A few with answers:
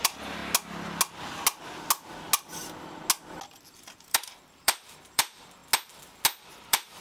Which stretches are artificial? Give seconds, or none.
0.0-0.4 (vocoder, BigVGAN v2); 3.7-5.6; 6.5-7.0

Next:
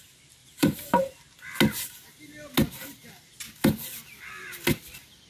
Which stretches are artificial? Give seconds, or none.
0.4-1.2 (vocoder, BigVGAN v2)